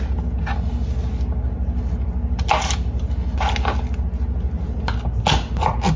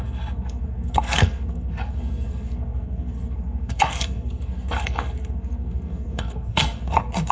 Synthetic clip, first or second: second